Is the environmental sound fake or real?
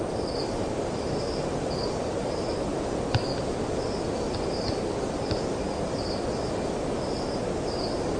real